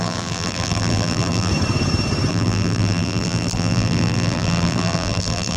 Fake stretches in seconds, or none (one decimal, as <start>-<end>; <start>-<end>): 0.0-1.5; 2.3-5.6